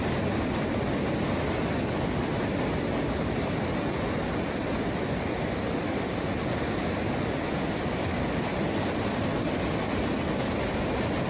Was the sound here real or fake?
real